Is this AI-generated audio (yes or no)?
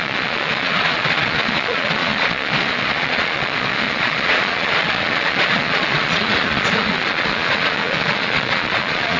yes